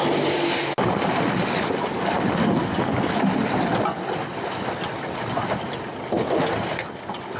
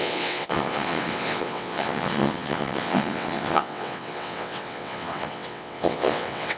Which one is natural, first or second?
first